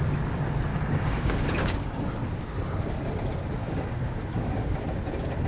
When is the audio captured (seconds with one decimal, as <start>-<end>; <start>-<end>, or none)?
0.0-0.7; 2.0-3.6; 4.8-5.5